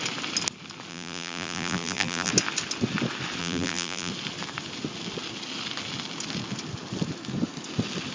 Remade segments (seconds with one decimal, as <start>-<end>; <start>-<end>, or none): 0.9-2.3; 3.4-4.1